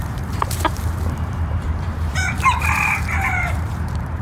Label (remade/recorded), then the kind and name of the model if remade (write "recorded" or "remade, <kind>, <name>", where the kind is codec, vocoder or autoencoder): remade, vocoder, BigVGAN v2